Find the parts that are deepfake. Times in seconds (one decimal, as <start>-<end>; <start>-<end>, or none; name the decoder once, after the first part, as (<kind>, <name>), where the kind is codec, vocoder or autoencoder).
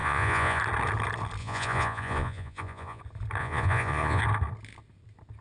0.0-0.6 (vocoder, Vocos); 1.4-3.0; 3.4-4.2